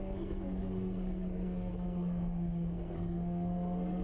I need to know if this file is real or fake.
fake